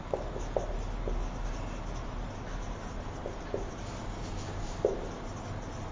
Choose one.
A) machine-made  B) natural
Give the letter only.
B